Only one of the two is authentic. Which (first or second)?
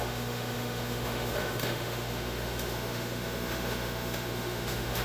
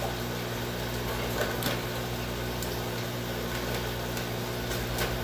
second